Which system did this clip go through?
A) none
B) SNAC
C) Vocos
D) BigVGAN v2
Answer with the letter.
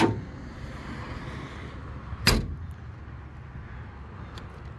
A